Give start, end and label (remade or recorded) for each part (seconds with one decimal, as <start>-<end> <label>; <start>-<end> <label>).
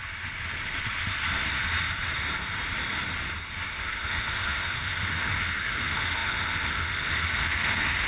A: 0.0-3.7 recorded; 3.7-8.1 remade